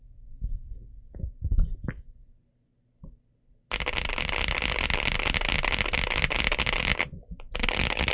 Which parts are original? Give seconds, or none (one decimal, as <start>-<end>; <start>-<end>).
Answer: 0.0-8.1